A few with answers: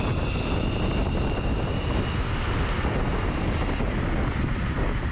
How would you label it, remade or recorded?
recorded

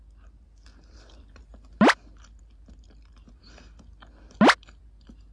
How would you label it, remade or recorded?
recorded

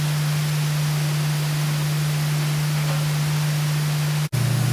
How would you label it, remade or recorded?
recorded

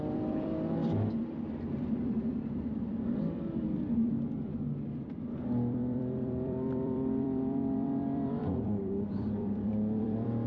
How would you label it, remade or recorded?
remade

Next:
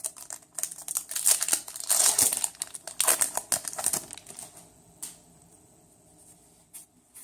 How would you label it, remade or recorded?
recorded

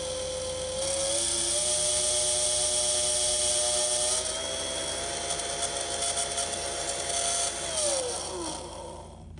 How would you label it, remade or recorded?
recorded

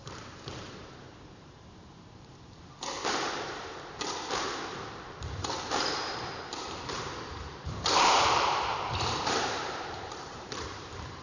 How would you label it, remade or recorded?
remade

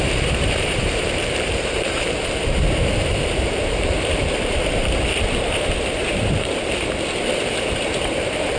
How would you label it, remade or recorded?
remade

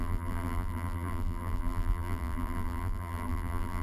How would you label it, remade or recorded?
remade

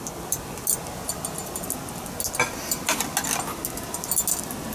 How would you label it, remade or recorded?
recorded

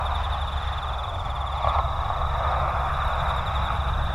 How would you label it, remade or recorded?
recorded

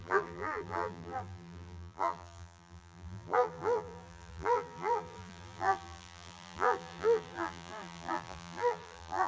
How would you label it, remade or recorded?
remade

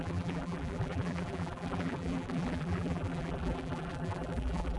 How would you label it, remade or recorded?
remade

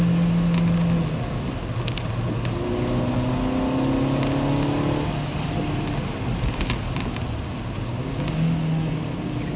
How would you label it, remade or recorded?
recorded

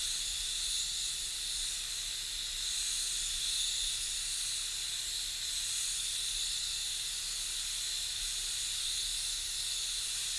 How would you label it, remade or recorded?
recorded